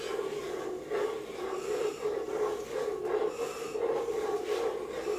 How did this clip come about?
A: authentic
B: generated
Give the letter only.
A